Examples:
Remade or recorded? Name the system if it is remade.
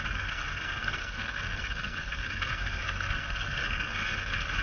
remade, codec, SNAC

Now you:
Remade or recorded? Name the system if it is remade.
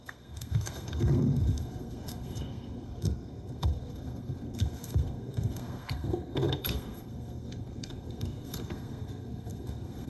remade, codec, SNAC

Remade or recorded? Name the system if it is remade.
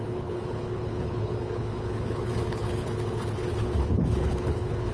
remade, codec, HILCodec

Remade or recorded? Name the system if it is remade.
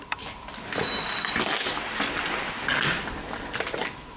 recorded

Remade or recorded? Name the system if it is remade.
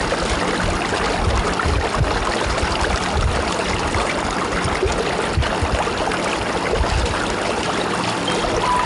recorded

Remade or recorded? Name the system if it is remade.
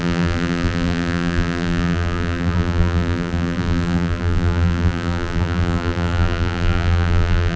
remade, vocoder, BigVGAN v2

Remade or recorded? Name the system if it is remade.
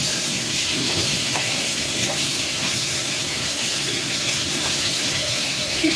remade, codec, SNAC